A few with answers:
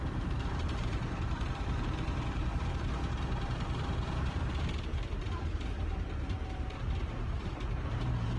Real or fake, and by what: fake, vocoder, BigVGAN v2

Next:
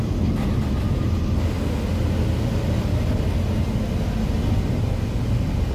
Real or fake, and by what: real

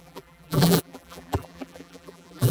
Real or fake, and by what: fake, vocoder, BigVGAN v2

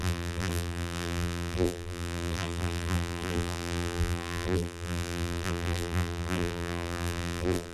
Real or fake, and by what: fake, vocoder, BigVGAN v2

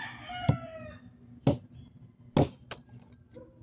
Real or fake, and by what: real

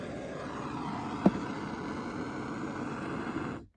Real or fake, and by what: real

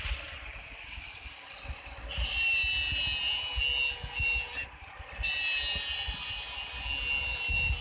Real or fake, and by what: real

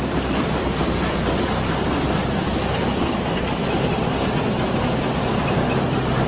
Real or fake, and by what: real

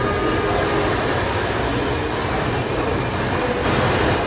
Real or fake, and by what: real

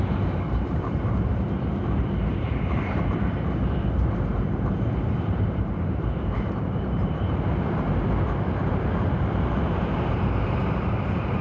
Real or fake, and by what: fake, vocoder, BigVGAN v2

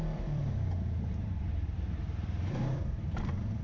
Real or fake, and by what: fake, vocoder, BigVGAN v2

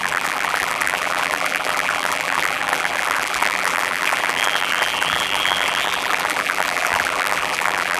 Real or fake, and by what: fake, vocoder, BigVGAN v2